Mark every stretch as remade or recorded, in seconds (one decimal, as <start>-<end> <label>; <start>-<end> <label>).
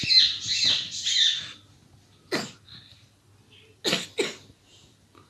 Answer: 0.0-5.3 recorded